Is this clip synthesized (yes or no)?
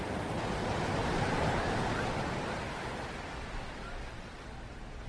yes